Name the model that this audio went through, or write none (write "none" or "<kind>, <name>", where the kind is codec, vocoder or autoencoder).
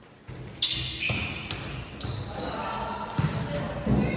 none